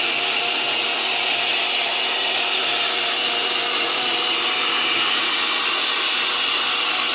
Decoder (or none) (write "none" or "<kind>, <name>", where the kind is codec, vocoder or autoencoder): none